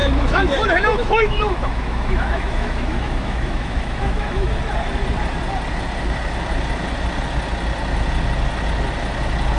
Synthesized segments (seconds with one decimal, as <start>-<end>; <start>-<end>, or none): 0.0-4.6